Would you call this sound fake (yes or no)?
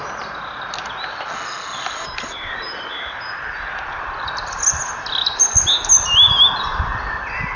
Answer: no